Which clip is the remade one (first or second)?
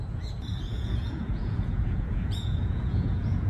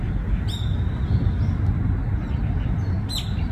first